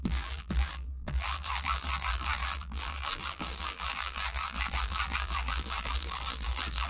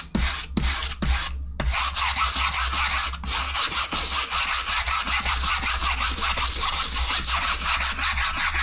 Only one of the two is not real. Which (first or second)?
first